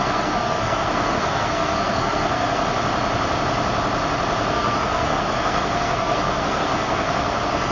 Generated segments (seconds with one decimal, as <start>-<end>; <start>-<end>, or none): 0.0-2.6; 4.5-7.7